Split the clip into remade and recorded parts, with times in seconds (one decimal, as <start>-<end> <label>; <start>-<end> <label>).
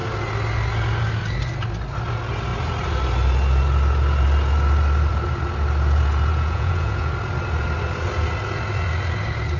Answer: 0.0-6.3 recorded; 6.3-7.1 remade; 7.1-9.6 recorded